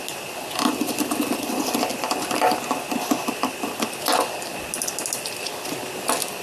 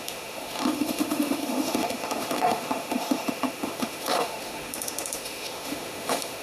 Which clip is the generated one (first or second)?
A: second